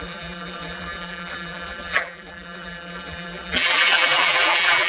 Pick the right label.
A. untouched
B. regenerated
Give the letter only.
B